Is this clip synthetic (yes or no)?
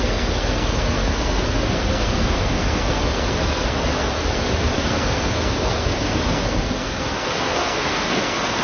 yes